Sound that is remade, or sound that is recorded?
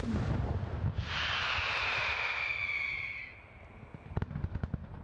recorded